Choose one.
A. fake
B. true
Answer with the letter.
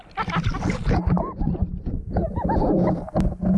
B